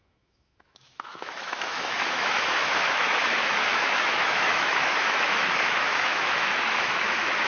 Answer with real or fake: fake